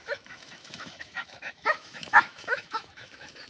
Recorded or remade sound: remade